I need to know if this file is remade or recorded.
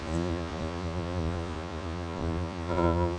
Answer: remade